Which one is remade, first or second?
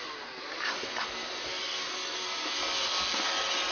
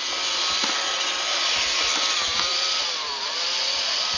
second